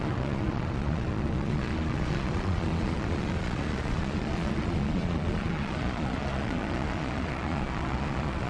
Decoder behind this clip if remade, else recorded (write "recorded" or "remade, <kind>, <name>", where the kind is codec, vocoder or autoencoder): remade, vocoder, Vocos